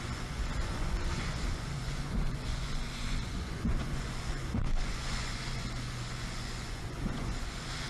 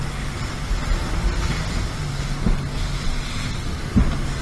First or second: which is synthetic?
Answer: first